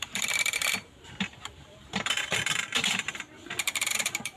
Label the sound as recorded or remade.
remade